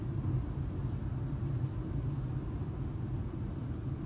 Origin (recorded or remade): recorded